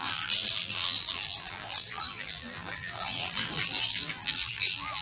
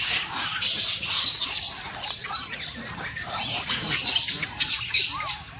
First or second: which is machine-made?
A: first